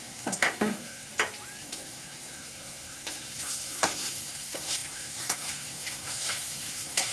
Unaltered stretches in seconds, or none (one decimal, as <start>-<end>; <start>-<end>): 1.1-1.6